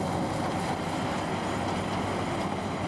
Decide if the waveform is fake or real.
real